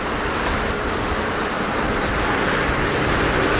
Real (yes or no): yes